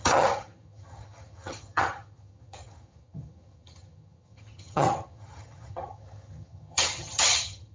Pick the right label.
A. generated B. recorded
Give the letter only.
A